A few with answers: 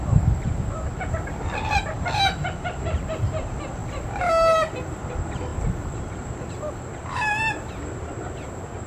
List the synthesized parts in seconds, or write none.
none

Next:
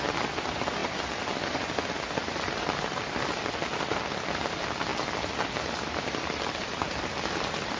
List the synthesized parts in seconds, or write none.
none

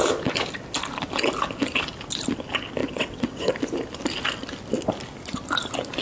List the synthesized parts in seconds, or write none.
2.8-3.5 (vocoder, WaveNeXt)

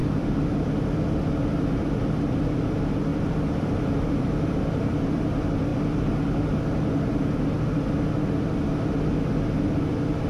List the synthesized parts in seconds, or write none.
0.0-2.6 (vocoder, BigVGAN v2); 3.1-5.2

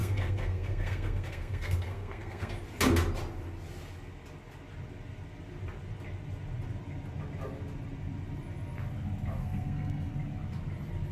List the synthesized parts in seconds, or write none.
0.0-2.6 (codec, SNAC); 9.4-10.1

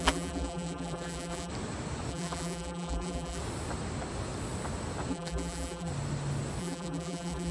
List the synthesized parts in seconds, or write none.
0.0-1.5 (vocoder, BigVGAN v2); 2.1-3.4; 5.1-5.9; 6.6-7.5

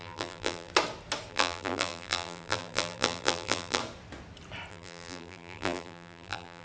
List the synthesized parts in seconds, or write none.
0.0-0.7 (vocoder, BigVGAN v2); 1.3-3.8; 4.7-6.6

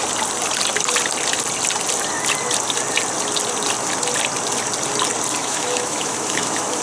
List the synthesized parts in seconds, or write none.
5.4-6.8 (autoencoder, DAC-VAE)